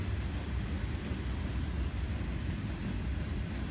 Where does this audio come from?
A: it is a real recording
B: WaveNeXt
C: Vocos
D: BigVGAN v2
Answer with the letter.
A